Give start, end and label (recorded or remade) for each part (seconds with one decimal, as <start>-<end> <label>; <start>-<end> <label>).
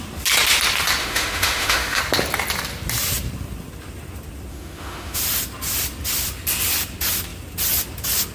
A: 0.0-1.0 recorded; 1.0-2.0 remade; 2.0-4.5 recorded; 4.5-5.2 remade; 5.2-8.3 recorded